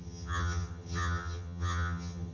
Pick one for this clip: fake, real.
fake